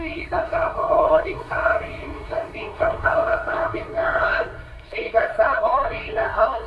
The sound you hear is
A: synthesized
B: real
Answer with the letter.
A